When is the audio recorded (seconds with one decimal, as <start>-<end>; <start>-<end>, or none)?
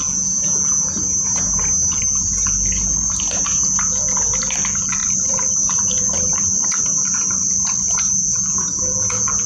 0.0-5.0; 8.1-9.5